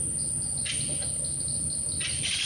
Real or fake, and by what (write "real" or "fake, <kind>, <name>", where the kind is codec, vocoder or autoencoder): real